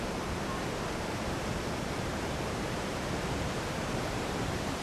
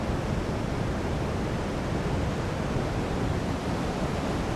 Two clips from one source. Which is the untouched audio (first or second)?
second